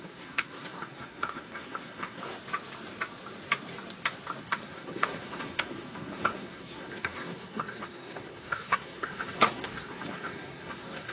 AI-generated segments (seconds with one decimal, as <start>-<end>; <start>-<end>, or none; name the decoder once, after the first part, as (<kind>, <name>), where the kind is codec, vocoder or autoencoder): 0.0-2.2 (codec, SNAC); 4.4-11.1